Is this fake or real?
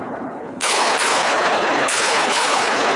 fake